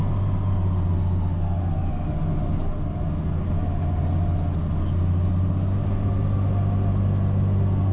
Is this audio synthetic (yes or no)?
no